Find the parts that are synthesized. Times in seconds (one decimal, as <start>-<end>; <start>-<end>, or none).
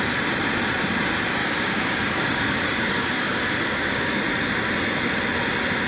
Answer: 1.4-4.2